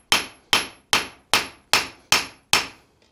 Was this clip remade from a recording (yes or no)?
no